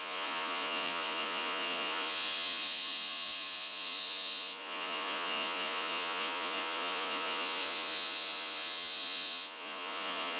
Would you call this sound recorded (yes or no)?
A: no